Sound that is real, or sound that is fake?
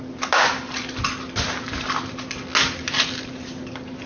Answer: real